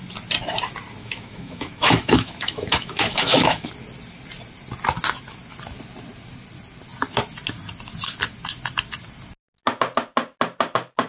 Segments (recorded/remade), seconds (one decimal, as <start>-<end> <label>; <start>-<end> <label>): 0.0-1.0 recorded; 1.0-3.7 remade; 3.7-11.1 recorded